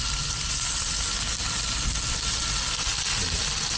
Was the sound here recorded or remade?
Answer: recorded